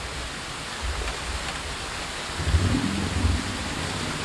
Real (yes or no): yes